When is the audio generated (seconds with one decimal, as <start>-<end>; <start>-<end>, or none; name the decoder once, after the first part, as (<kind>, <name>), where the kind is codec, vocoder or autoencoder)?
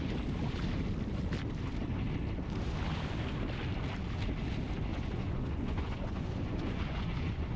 4.9-7.6 (vocoder, Vocos)